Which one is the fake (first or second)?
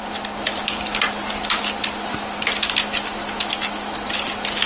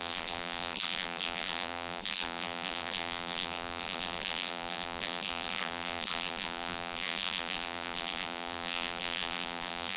second